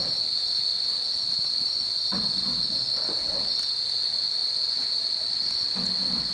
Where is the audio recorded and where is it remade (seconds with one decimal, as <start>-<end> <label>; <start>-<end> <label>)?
0.0-0.7 recorded; 0.7-1.7 remade; 1.7-4.4 recorded; 4.4-5.3 remade; 5.3-6.3 recorded